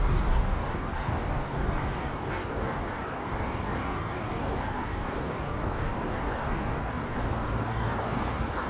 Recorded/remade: remade